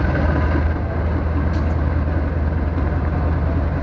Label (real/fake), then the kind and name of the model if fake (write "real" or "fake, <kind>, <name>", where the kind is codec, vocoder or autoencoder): real